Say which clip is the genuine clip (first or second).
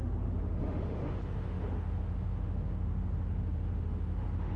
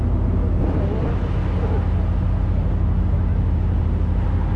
second